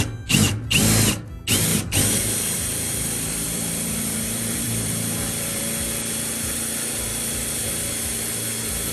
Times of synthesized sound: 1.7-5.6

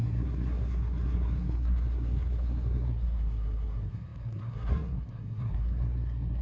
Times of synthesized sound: 0.0-6.4

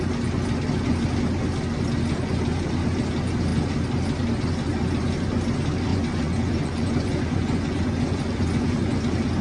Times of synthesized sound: 5.9-9.0

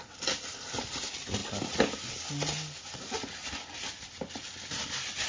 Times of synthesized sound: none